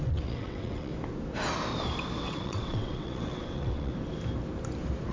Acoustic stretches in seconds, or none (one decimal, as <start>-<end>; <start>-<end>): 0.9-2.2; 3.9-5.1